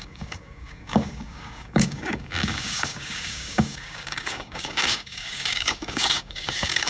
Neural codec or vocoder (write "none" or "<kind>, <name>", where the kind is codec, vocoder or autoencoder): codec, DAC